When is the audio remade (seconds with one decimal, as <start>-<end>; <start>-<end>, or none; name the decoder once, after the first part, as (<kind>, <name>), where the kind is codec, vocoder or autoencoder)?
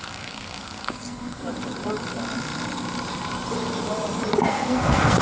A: 0.0-1.4 (codec, SNAC); 4.5-5.2